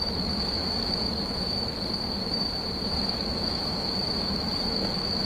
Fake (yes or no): yes